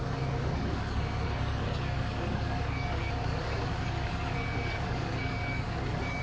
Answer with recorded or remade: remade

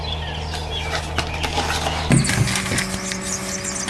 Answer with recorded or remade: recorded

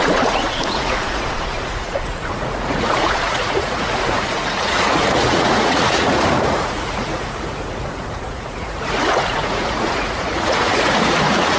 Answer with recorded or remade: remade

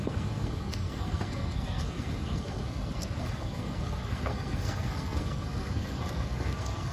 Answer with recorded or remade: remade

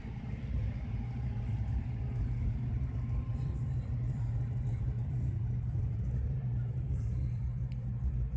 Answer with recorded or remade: remade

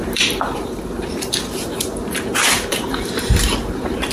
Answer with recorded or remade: remade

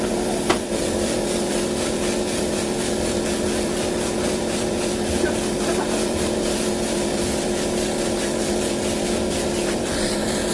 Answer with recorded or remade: recorded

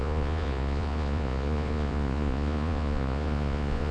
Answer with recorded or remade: remade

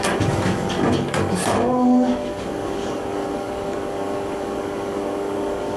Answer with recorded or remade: remade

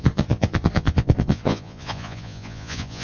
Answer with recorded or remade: remade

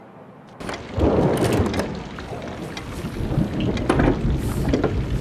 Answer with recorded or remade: recorded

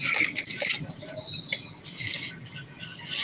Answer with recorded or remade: recorded